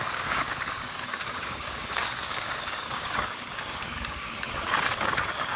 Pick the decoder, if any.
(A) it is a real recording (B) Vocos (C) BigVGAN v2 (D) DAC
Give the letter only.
D